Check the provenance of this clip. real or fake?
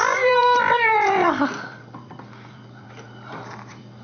fake